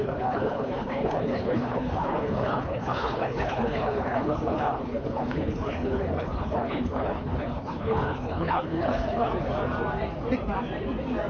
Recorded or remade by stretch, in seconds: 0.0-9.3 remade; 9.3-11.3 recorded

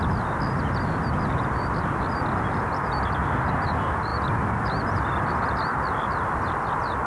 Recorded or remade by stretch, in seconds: 0.0-7.1 recorded